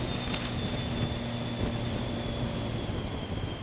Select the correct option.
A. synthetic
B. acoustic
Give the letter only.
B